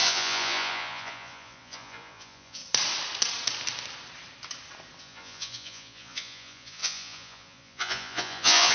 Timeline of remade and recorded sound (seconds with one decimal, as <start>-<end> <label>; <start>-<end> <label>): 0.0-2.6 remade; 2.6-5.0 recorded; 5.0-8.7 remade